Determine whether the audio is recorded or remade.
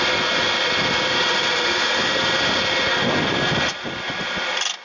recorded